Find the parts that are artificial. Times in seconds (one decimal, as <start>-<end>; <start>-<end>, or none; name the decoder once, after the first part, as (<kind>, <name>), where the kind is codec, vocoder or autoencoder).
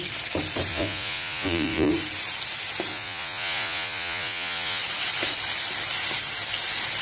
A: 0.7-1.9 (vocoder, Vocos); 2.9-4.8